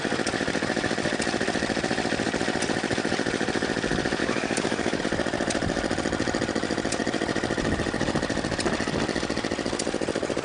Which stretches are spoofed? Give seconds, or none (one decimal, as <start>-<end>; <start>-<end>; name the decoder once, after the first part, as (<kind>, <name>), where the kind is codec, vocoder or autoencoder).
4.2-5.0 (codec, DAC)